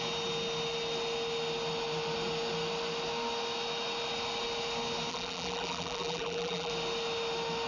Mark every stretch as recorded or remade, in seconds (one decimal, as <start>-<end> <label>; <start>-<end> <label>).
0.0-5.1 recorded; 5.1-6.7 remade; 6.7-7.7 recorded